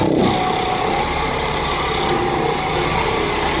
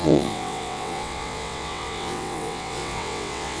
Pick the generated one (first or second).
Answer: second